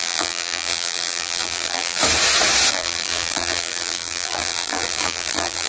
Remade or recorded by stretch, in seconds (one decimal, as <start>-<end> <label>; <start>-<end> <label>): 0.0-2.0 remade; 2.0-2.7 recorded; 2.7-5.7 remade